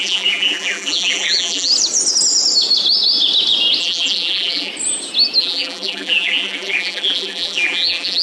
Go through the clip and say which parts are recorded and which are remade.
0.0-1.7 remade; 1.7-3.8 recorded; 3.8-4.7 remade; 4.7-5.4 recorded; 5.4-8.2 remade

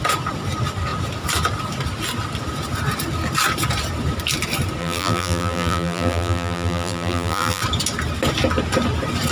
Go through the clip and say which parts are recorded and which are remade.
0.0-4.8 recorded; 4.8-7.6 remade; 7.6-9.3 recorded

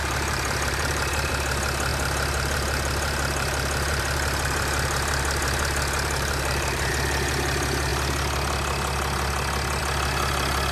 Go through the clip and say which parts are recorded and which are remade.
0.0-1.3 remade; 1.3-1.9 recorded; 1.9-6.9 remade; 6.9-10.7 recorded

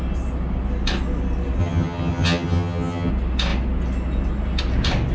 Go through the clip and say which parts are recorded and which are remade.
0.0-1.6 recorded; 1.6-3.1 remade; 3.1-5.1 recorded

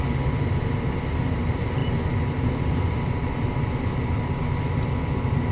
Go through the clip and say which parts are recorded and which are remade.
0.0-5.5 recorded

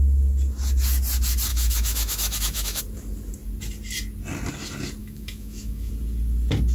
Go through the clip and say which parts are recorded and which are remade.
0.0-1.5 recorded; 1.5-2.8 remade; 2.8-5.0 recorded; 5.0-5.9 remade; 5.9-6.7 recorded

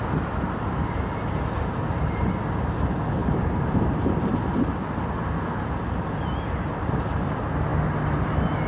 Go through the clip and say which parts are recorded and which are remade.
0.0-3.2 recorded; 3.2-4.0 remade; 4.0-8.7 recorded